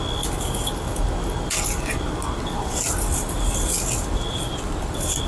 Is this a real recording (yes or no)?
yes